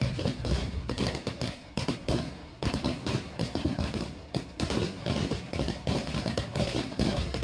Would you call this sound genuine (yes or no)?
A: no